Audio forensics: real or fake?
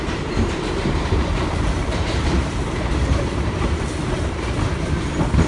fake